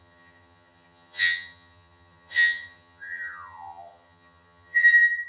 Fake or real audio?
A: fake